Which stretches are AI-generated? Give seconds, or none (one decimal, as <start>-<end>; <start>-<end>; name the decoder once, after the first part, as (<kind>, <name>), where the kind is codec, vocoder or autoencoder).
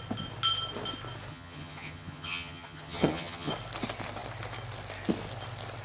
1.3-3.5 (vocoder, HiFi-GAN)